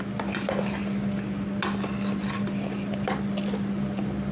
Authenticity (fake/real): real